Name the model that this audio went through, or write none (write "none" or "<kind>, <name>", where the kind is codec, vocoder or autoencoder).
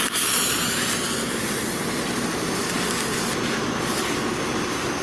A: none